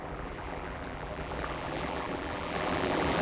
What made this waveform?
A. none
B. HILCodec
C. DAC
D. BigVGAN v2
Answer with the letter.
D